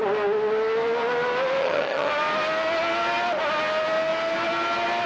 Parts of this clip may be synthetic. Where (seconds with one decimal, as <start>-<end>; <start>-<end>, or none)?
1.6-2.1